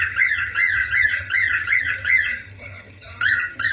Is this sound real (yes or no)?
no